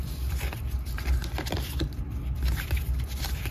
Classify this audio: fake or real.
fake